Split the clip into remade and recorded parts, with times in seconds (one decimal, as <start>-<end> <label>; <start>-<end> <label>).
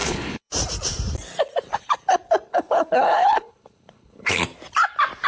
0.0-0.5 remade; 0.5-2.5 recorded; 2.5-4.4 remade; 4.4-5.3 recorded